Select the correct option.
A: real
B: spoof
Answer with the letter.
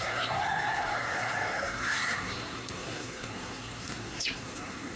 B